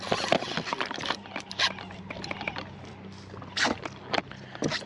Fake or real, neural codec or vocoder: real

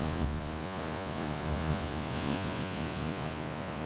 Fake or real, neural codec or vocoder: fake, vocoder, Vocos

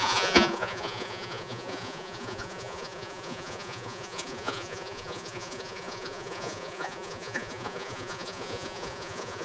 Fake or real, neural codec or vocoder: fake, vocoder, Vocos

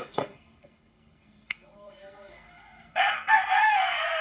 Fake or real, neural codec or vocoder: fake, codec, SNAC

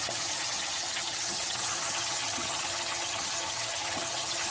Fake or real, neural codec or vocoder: fake, vocoder, HiFi-GAN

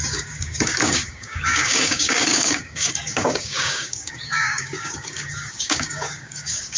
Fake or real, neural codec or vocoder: fake, codec, DAC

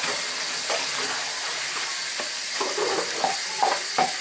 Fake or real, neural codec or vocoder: real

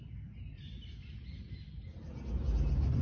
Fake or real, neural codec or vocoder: real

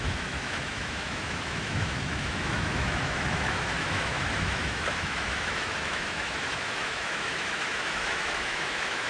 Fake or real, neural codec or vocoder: fake, autoencoder, DAC-VAE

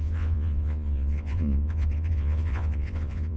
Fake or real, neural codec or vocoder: fake, vocoder, Vocos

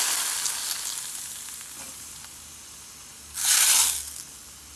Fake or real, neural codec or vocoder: real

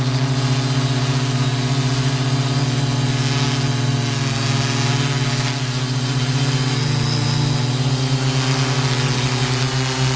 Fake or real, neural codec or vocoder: real